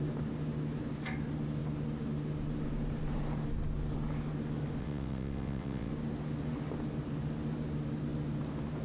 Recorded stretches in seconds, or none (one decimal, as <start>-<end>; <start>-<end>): 0.0-4.8; 5.9-8.8